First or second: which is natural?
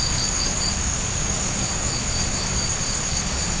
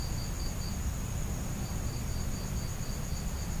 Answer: second